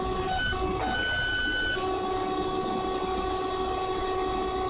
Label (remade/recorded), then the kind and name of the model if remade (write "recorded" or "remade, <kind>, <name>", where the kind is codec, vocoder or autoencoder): recorded